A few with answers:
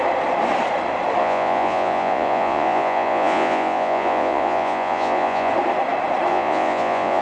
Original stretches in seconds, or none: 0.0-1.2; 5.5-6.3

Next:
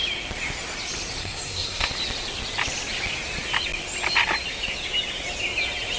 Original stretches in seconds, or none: 0.0-1.2; 1.9-6.0

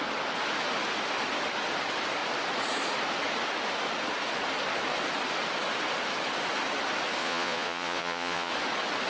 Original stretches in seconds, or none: 0.0-7.2; 8.5-9.1

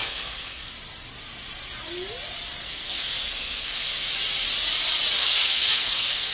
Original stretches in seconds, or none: 0.7-2.6; 4.1-5.2

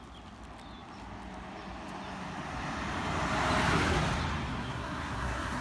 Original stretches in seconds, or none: 0.0-4.5

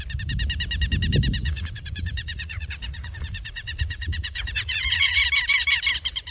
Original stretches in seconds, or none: 0.0-1.4; 5.2-6.3

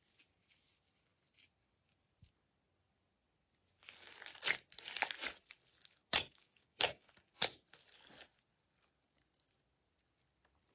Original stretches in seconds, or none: 0.0-6.0; 7.1-10.7

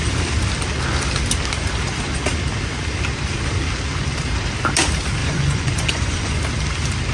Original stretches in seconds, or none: 0.0-5.2; 6.4-7.1